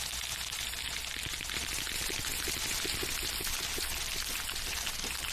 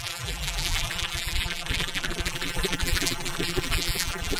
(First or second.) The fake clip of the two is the second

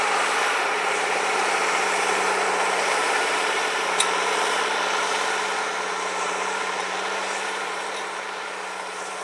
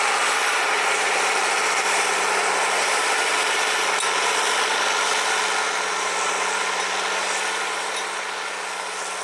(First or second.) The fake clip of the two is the first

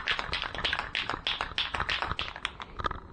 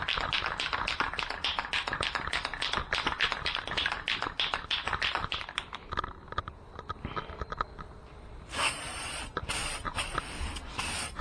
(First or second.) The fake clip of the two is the second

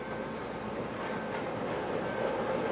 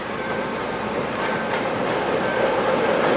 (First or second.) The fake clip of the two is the second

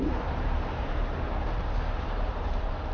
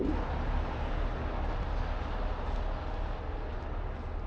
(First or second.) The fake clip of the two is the first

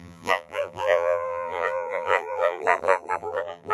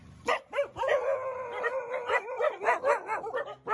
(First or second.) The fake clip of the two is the first